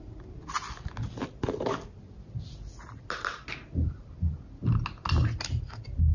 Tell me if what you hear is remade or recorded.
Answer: recorded